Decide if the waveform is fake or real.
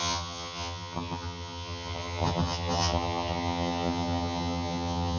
fake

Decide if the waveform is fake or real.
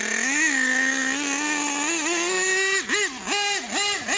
real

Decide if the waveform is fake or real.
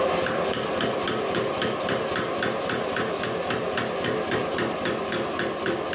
real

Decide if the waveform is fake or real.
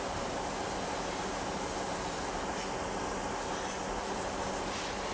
real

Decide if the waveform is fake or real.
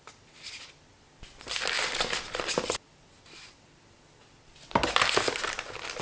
real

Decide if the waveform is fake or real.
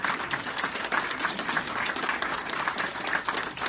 real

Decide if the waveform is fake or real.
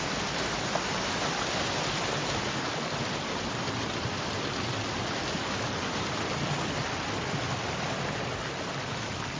real